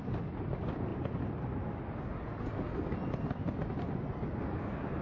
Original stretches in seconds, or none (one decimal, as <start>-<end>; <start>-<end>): 0.0-5.0